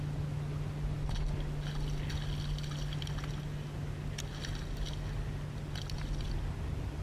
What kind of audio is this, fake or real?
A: real